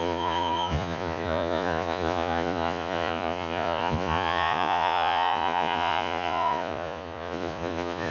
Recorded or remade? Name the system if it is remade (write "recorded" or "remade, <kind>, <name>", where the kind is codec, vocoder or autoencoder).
remade, vocoder, Vocos